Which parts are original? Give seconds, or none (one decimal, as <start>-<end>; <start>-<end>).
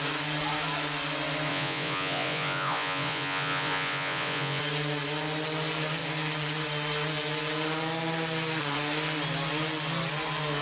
0.0-1.5; 4.6-10.6